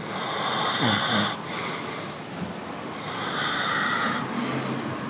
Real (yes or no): yes